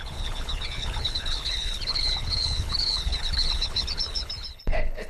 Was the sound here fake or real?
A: fake